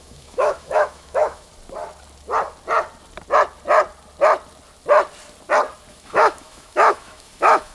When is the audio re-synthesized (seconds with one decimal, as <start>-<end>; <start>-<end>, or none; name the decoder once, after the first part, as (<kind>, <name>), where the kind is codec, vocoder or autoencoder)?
0.0-1.5 (autoencoder, DAC-VAE); 5.9-7.7